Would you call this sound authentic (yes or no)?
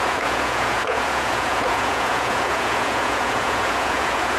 no